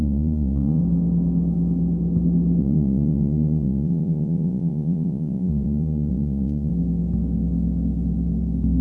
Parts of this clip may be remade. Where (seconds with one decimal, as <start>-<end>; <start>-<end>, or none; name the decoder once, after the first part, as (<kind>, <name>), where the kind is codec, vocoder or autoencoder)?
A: 0.0-0.8 (vocoder, Vocos); 2.6-6.7